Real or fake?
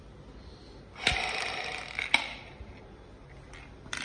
real